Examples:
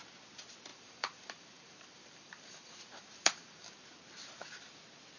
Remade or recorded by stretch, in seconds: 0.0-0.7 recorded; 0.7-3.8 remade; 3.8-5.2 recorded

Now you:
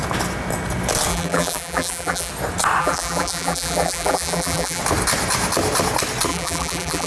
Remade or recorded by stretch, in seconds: 0.0-1.1 recorded; 1.1-2.3 remade; 2.3-2.8 recorded; 2.8-4.8 remade; 4.8-6.3 recorded; 6.3-7.1 remade

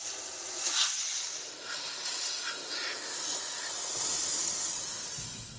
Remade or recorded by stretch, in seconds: 0.0-5.6 recorded

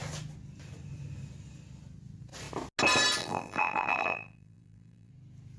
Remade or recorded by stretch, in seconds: 0.0-3.2 recorded; 3.2-5.1 remade; 5.1-5.6 recorded

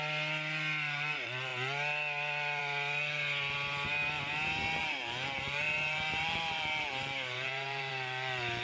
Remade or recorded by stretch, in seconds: 0.0-4.8 recorded; 4.8-7.9 remade; 7.9-8.6 recorded

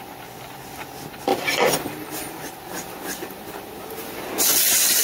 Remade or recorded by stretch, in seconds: 0.0-1.3 recorded; 1.3-4.3 remade; 4.3-5.0 recorded

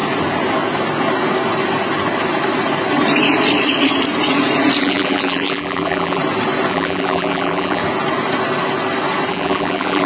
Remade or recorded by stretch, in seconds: 0.0-4.8 recorded; 4.8-6.2 remade; 6.2-6.7 recorded; 6.7-7.8 remade; 7.8-9.3 recorded; 9.3-10.1 remade

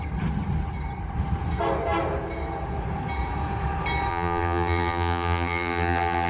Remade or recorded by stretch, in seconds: 0.0-4.1 recorded; 4.1-6.3 remade